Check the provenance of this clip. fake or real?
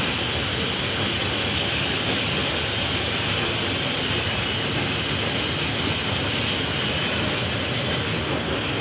real